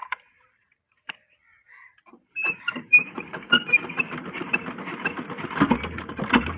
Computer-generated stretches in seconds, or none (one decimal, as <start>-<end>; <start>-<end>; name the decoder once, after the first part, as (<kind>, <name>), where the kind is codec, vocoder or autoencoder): 0.0-1.1 (vocoder, BigVGAN v2); 1.5-4.7